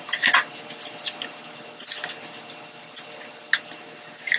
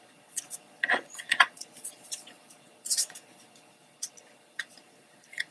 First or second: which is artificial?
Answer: second